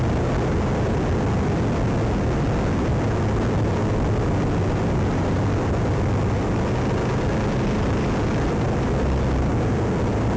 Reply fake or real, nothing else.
real